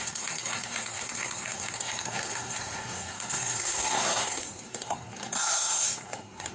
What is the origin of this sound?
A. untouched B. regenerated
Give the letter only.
B